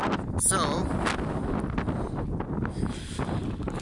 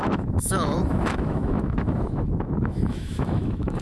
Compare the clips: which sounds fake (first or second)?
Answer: second